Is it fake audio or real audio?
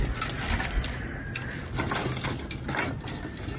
real